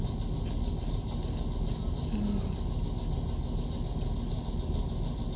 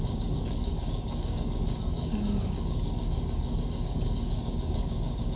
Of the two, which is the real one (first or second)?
first